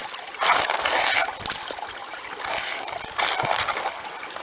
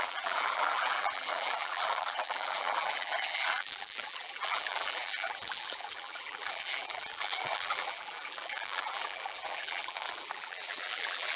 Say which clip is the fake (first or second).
second